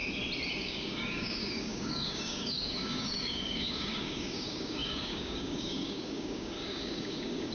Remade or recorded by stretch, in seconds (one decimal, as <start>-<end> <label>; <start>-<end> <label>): 0.0-0.6 recorded; 0.6-7.5 remade